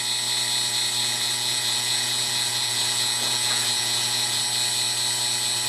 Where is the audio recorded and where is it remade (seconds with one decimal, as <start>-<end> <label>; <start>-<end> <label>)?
0.0-1.0 recorded; 1.0-4.4 remade; 4.4-5.7 recorded